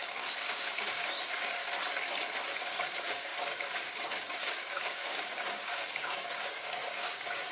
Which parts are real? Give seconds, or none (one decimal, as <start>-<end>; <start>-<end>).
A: 1.6-2.6